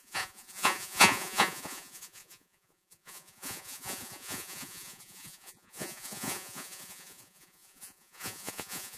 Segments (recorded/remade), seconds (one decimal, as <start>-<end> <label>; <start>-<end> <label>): 0.0-9.0 remade